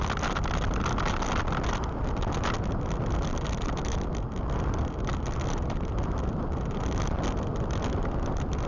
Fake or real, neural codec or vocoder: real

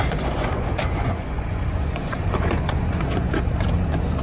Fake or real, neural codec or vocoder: fake, vocoder, Vocos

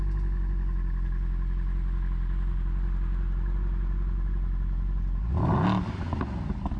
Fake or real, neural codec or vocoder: real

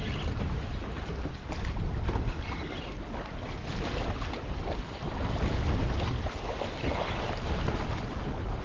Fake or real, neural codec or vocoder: real